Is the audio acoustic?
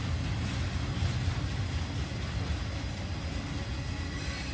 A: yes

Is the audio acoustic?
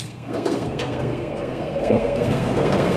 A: no